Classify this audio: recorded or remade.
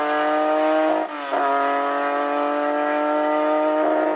recorded